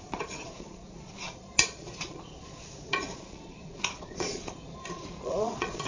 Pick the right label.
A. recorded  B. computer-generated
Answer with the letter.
B